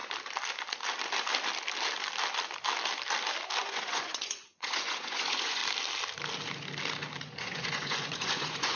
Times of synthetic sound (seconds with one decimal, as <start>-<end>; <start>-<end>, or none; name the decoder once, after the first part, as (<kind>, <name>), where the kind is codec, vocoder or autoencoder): 3.6-5.6 (vocoder, Vocos); 7.2-8.8